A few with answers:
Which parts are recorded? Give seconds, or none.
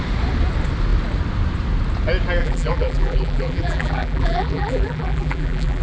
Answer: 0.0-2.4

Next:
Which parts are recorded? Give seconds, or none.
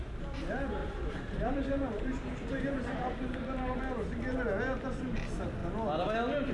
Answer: 0.0-0.8; 3.8-6.5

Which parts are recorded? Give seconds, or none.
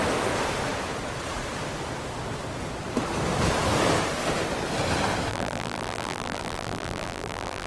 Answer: 0.0-5.3